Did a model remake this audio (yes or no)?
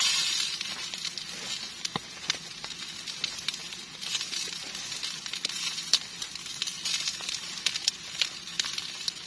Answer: no